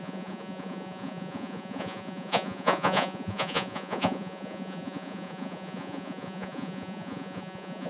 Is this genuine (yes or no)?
no